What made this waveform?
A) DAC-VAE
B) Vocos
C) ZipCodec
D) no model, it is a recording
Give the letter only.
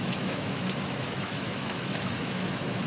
A